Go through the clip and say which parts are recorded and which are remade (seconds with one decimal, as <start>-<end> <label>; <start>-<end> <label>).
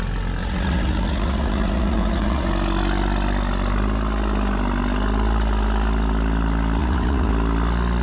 0.0-0.4 recorded; 0.4-2.5 remade; 2.5-6.8 recorded; 6.8-7.3 remade; 7.3-8.0 recorded